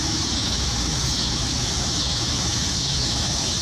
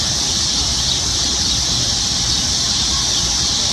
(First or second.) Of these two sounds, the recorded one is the second